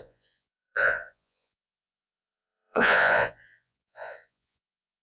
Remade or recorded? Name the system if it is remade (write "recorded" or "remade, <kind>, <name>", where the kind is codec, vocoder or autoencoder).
remade, vocoder, Vocos